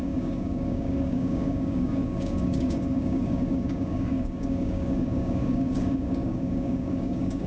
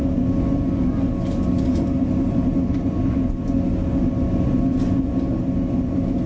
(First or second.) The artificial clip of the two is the first